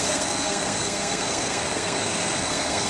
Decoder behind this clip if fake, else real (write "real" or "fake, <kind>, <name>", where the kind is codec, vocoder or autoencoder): fake, codec, SNAC